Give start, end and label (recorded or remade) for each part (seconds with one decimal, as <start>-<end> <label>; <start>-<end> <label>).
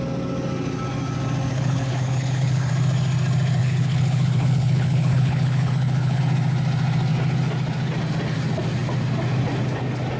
0.0-1.5 recorded; 1.5-2.7 remade; 2.7-3.6 recorded; 3.6-6.2 remade; 6.2-10.2 recorded